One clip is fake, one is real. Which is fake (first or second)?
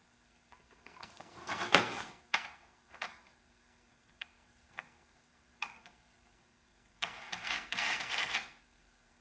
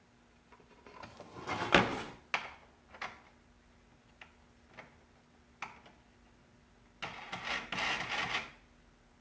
first